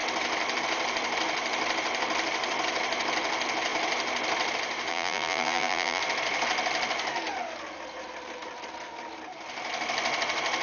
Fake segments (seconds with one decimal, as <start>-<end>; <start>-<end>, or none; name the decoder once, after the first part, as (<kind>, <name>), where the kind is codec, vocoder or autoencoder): 4.9-6.0 (vocoder, BigVGAN v2)